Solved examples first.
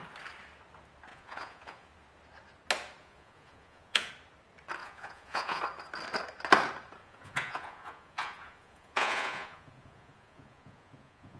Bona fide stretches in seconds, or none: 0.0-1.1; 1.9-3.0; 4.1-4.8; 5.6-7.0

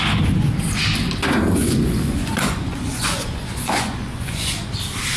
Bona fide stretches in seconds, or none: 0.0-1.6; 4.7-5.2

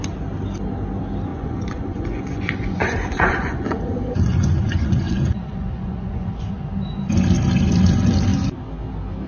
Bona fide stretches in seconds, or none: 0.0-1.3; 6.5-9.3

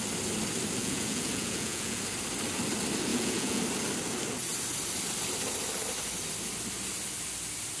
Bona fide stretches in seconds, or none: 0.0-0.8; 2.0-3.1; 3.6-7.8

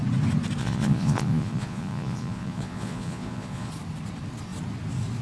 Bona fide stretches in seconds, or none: 0.0-0.6; 3.7-5.2